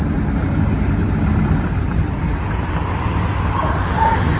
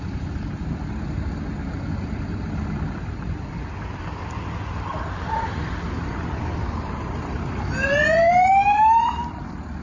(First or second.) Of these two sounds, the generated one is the second